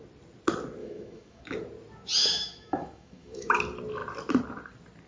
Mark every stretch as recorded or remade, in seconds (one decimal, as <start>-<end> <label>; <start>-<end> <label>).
0.0-0.8 recorded; 0.8-1.4 remade; 1.4-2.2 recorded; 2.2-3.6 remade; 3.6-5.1 recorded